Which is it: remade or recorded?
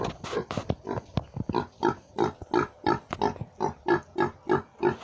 recorded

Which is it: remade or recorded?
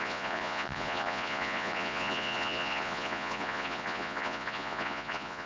remade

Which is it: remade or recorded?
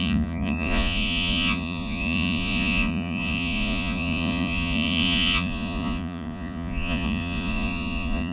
remade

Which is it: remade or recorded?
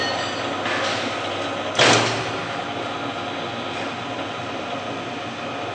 recorded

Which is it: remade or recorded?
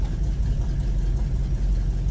recorded